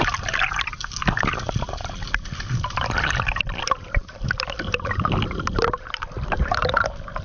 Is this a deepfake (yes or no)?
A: no